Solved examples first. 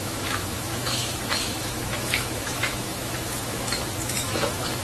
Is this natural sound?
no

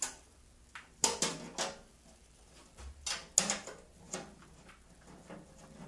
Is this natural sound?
yes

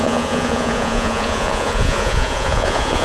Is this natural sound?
no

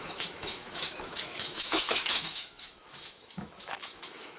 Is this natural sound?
no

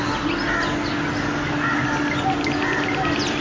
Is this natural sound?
yes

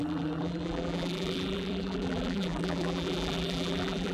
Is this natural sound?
no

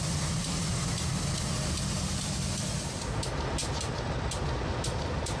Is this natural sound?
yes